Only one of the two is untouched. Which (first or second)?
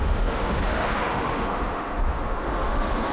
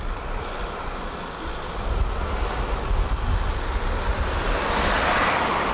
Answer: second